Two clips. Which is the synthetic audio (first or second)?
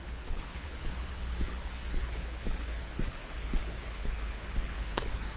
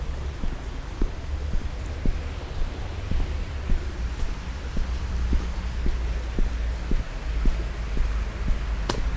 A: first